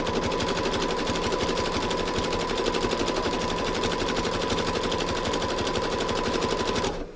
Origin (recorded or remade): recorded